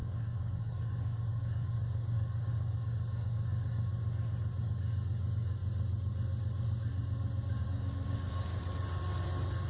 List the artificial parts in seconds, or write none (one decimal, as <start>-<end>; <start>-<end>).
0.0-3.9; 4.6-5.6; 7.6-8.5